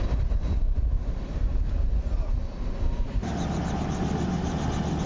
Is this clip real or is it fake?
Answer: real